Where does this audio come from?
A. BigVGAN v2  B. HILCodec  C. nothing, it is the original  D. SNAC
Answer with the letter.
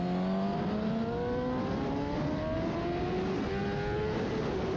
C